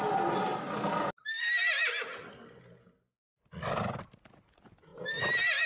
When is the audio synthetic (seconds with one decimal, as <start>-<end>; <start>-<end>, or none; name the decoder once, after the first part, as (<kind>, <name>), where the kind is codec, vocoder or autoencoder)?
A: none